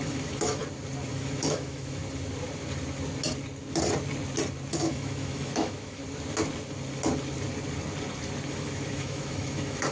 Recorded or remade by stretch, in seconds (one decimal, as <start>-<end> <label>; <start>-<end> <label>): 0.0-0.6 remade; 0.6-1.1 recorded; 1.1-2.0 remade; 2.0-4.7 recorded; 4.7-6.0 remade; 6.0-8.5 recorded; 8.5-9.9 remade